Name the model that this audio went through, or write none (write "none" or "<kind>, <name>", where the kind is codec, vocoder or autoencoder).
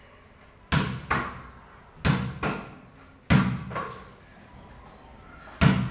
none